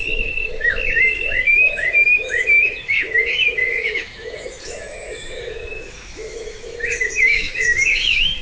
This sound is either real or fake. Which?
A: fake